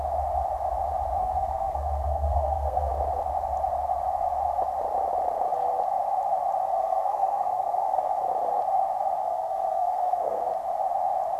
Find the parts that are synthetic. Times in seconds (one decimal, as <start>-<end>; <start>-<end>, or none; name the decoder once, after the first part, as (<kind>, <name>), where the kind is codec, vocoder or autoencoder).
1.2-2.9 (codec, SNAC); 6.7-8.2; 9.2-10.4